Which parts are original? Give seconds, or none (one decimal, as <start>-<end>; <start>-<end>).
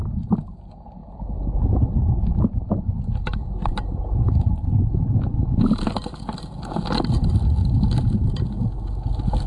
0.0-1.0; 4.8-7.6; 8.4-9.5